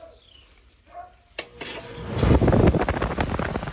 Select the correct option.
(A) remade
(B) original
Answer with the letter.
B